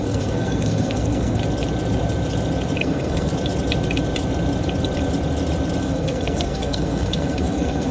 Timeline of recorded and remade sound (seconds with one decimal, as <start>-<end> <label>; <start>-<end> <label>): 0.0-1.4 remade; 1.4-2.8 recorded; 2.8-3.3 remade; 3.3-5.8 recorded; 5.8-7.9 remade

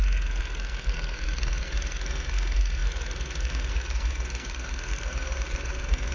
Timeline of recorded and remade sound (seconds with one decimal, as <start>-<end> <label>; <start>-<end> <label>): 0.0-6.1 remade